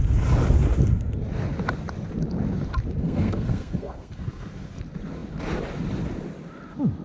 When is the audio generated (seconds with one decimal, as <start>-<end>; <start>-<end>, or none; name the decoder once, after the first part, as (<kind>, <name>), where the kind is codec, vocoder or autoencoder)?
3.0-4.8 (codec, SNAC)